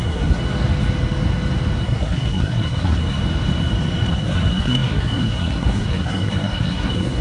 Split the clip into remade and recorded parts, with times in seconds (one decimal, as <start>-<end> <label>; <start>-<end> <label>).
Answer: 0.0-0.4 remade; 0.4-1.8 recorded; 1.8-3.2 remade; 3.2-4.1 recorded; 4.1-7.2 remade